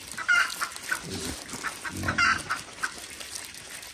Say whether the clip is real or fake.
real